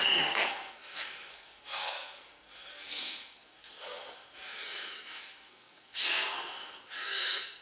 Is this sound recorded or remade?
remade